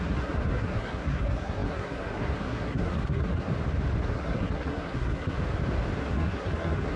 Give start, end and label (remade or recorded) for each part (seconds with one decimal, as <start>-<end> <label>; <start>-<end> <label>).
0.0-3.5 remade; 3.5-4.0 recorded; 4.0-5.4 remade; 5.4-6.0 recorded; 6.0-7.0 remade